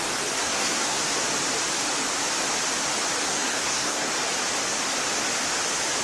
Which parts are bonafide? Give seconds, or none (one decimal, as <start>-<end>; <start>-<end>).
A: 0.0-0.4; 1.0-3.3; 4.1-6.0